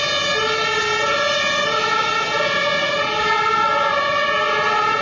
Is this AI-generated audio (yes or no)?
no